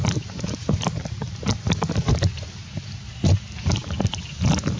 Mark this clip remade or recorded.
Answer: recorded